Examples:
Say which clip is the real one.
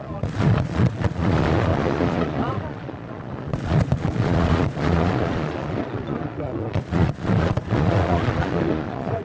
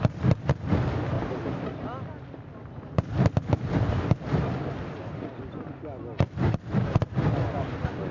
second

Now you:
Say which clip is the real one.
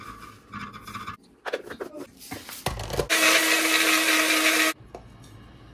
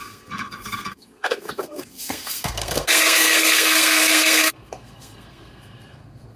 first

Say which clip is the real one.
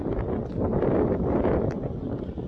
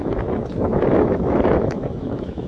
first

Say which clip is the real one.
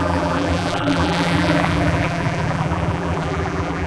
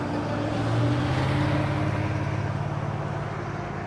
second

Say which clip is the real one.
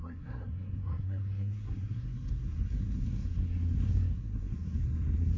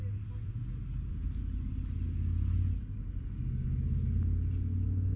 second